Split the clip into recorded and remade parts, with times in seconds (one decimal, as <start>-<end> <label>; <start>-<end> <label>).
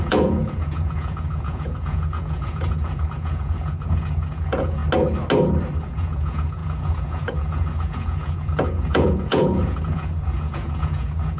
0.0-4.8 remade; 4.8-5.8 recorded; 5.8-11.4 remade